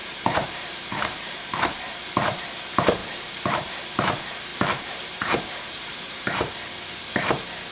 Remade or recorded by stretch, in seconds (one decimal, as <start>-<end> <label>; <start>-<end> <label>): 0.0-1.5 remade; 1.5-3.0 recorded; 3.0-3.8 remade; 3.8-4.5 recorded; 4.5-6.5 remade; 6.5-7.7 recorded